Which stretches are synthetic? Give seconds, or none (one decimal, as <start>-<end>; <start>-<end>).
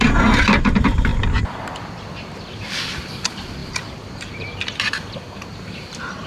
0.0-1.1; 1.8-6.3